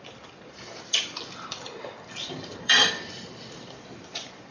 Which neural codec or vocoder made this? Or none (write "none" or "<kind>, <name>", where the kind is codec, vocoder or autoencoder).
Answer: vocoder, BigVGAN v2